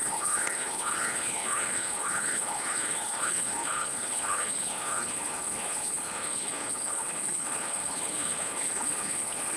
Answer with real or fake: fake